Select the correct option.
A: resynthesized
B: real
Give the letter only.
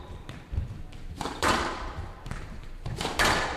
A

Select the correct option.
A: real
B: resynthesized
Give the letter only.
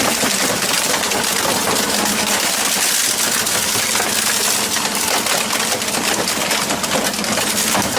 A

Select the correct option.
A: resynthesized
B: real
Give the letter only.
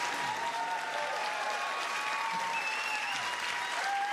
B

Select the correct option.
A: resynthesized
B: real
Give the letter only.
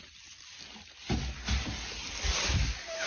B